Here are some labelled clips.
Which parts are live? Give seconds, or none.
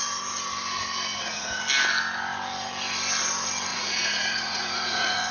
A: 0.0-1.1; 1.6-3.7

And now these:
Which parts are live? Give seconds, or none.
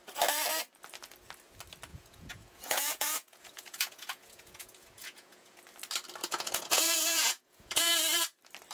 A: 0.0-1.9; 5.6-6.2; 7.9-8.7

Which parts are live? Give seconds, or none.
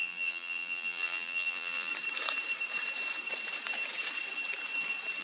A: 1.9-5.2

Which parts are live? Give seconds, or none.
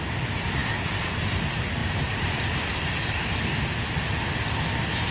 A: 0.0-1.8; 2.5-5.1